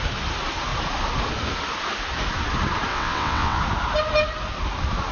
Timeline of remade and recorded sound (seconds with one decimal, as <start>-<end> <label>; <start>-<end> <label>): 0.0-2.9 recorded; 2.9-3.6 remade; 3.6-5.1 recorded

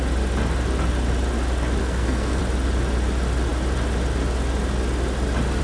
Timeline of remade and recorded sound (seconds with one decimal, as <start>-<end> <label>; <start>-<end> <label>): 0.0-1.8 recorded; 1.8-2.4 remade; 2.4-5.6 recorded

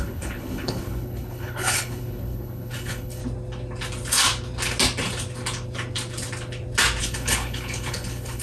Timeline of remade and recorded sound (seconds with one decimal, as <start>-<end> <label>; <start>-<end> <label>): 0.0-3.2 remade; 3.2-7.0 recorded; 7.0-8.4 remade

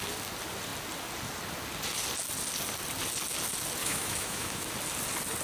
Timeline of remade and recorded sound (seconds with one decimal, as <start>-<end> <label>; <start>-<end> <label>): 0.0-3.8 recorded; 3.8-4.7 remade; 4.7-5.4 recorded